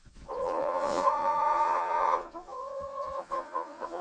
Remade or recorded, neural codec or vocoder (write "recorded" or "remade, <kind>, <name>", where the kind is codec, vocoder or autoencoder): remade, vocoder, Vocos